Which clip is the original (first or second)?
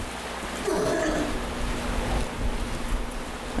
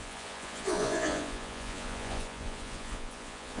first